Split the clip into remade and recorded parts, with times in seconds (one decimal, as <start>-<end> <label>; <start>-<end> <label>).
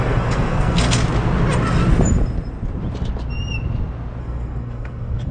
0.0-1.0 remade; 1.0-4.2 recorded; 4.2-5.3 remade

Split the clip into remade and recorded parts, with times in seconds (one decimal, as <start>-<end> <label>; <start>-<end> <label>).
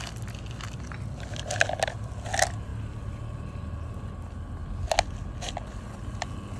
0.0-6.6 recorded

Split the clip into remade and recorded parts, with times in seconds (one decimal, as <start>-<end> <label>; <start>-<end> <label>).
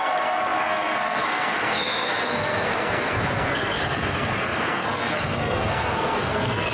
0.0-6.7 remade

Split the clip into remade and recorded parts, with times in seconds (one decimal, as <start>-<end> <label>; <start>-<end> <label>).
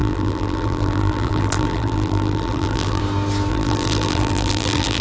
0.0-3.0 remade; 3.0-3.5 recorded; 3.5-5.0 remade